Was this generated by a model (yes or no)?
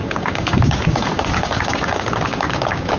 yes